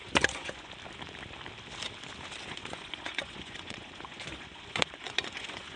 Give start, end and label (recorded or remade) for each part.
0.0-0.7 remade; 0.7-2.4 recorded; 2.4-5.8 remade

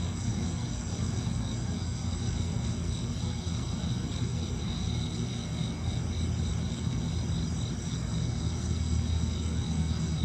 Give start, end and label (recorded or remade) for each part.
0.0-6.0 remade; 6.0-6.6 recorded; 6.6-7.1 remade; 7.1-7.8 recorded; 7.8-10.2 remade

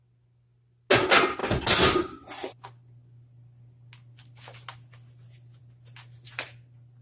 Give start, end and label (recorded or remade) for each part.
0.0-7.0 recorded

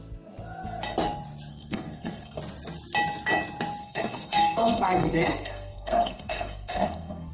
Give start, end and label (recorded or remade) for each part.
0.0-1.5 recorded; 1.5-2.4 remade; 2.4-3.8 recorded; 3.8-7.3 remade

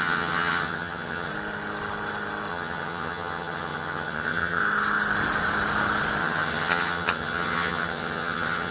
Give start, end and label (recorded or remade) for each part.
0.0-1.3 remade; 1.3-2.5 recorded; 2.5-4.6 remade; 4.6-6.2 recorded; 6.2-8.7 remade